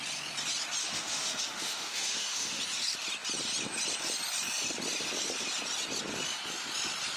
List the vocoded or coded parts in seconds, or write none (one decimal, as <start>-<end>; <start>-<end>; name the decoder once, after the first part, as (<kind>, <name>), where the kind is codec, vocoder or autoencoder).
0.8-2.6 (autoencoder, DAC-VAE)